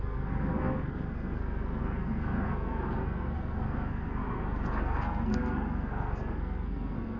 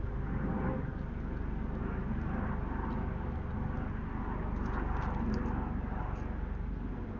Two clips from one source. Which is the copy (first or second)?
first